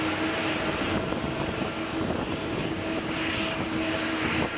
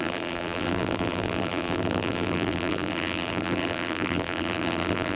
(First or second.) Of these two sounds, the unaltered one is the first